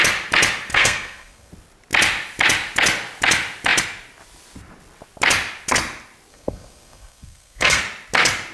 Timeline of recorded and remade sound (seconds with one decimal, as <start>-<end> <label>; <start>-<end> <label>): 0.0-0.7 recorded; 0.7-1.5 remade; 1.5-6.3 recorded; 6.3-7.8 remade; 7.8-8.5 recorded